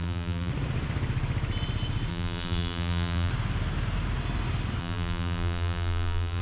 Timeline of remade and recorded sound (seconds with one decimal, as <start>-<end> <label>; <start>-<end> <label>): 0.0-0.5 remade; 0.5-2.1 recorded; 2.1-3.3 remade; 3.3-4.8 recorded; 4.8-6.4 remade